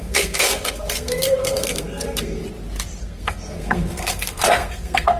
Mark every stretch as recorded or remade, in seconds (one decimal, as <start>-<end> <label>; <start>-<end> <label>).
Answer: 0.0-2.4 remade; 2.4-3.0 recorded; 3.0-5.2 remade